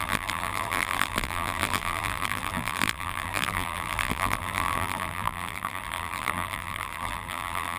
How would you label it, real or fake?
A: fake